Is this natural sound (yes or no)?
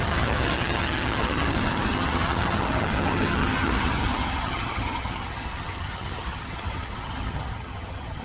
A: no